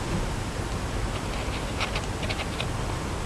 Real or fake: real